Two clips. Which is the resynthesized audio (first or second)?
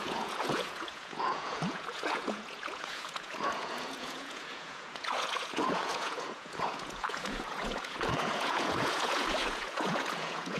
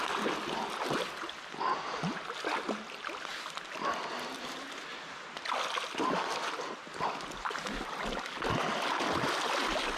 first